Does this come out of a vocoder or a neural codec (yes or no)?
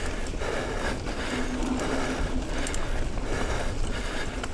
no